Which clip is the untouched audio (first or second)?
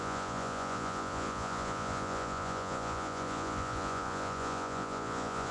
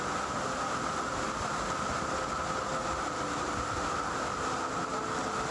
second